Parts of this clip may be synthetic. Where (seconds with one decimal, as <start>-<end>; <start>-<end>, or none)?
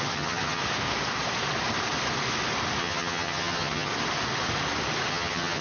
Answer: 0.0-0.6; 2.8-3.9; 5.1-5.6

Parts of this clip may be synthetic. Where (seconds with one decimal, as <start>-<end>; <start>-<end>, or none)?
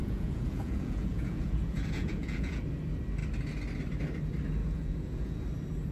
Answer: 0.0-2.6; 4.6-5.4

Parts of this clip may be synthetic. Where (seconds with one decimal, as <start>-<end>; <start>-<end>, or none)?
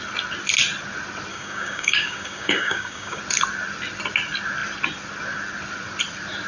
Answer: 1.3-3.2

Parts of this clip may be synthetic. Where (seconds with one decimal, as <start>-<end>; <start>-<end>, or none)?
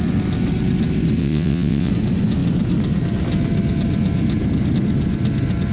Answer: 1.2-1.9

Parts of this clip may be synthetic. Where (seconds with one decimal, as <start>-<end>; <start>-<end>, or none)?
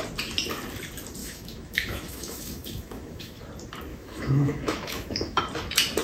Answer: 1.2-3.4; 3.9-5.4